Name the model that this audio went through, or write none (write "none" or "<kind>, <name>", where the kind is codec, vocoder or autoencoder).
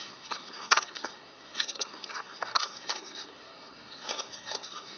codec, SNAC